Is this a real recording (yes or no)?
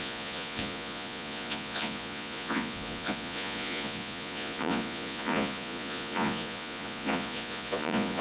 no